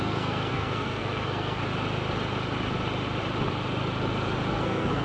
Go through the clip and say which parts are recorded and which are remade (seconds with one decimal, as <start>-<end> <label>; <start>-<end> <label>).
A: 0.0-1.6 remade; 1.6-4.5 recorded; 4.5-5.0 remade